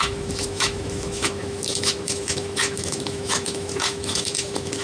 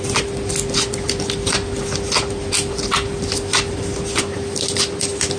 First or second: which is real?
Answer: second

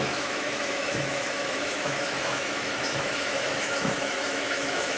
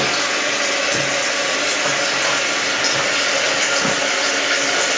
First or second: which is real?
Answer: second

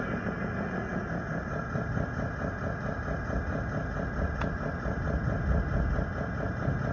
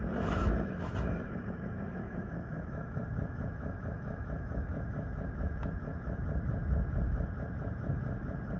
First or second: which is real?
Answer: first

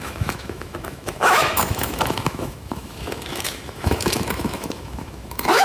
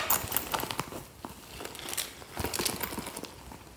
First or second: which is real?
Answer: second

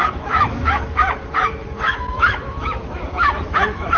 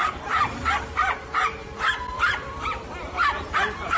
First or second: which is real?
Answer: second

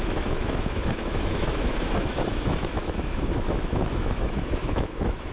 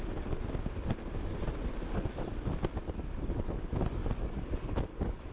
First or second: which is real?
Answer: second